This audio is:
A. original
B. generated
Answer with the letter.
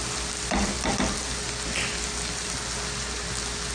A